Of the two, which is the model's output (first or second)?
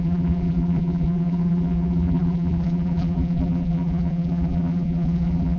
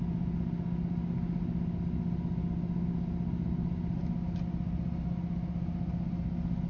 first